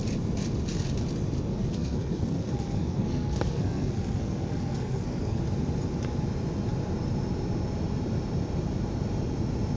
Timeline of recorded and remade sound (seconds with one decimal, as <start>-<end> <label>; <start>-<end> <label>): 0.0-1.5 recorded; 1.5-5.4 remade; 5.4-9.8 recorded